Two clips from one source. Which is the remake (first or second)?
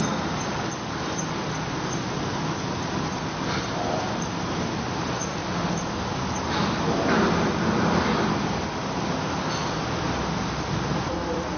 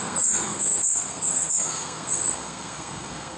second